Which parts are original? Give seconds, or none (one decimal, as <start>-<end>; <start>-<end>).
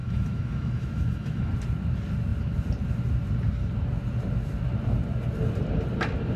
1.5-6.4